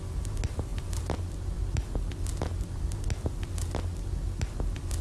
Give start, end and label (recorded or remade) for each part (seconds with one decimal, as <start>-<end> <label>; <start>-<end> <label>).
0.0-0.7 recorded; 0.7-2.3 remade; 2.3-5.0 recorded